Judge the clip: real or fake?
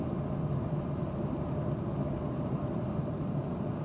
real